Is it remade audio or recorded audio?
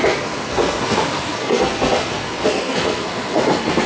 remade